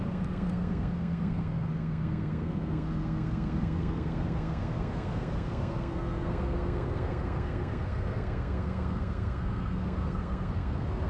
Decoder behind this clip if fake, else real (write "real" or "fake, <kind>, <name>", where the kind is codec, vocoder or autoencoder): fake, codec, SNAC